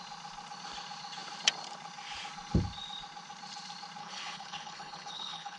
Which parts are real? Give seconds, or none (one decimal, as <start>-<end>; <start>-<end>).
0.0-4.0